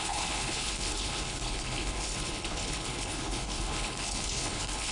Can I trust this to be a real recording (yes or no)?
no